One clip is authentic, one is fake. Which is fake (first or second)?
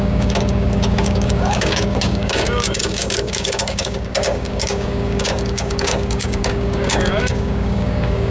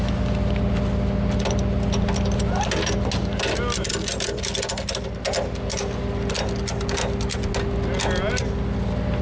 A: first